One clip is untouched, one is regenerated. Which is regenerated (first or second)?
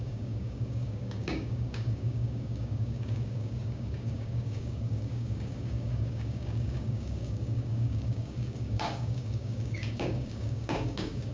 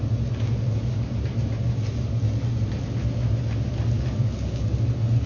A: first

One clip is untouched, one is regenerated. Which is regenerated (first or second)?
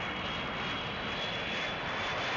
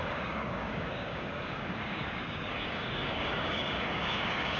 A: second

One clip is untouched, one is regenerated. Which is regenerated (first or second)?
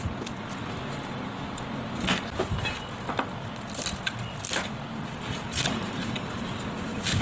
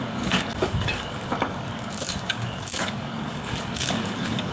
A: second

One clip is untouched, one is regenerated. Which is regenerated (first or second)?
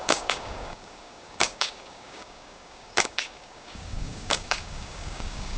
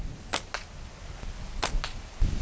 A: first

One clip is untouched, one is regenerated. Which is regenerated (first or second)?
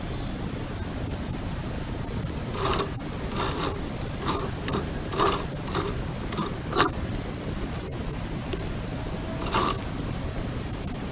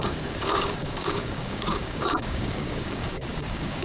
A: second